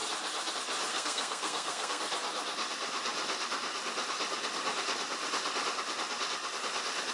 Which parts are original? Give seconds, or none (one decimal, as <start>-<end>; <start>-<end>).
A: 0.0-0.9; 2.0-7.1